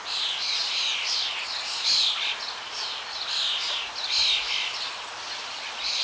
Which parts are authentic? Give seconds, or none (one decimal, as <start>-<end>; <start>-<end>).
0.0-6.0

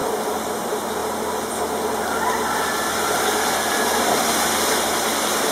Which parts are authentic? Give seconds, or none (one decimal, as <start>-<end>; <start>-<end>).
0.0-5.5

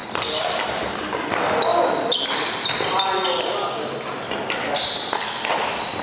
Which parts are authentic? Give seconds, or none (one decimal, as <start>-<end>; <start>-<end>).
0.0-6.0